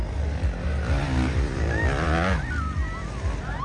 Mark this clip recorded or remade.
recorded